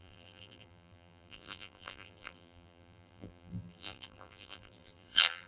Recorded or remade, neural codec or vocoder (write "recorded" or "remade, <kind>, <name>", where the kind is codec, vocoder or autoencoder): remade, vocoder, BigVGAN v2